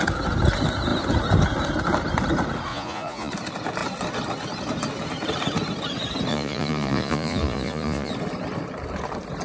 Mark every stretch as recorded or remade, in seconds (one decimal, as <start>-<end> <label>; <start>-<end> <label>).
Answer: 0.0-2.7 recorded; 2.7-3.3 remade; 3.3-6.3 recorded; 6.3-8.1 remade; 8.1-9.4 recorded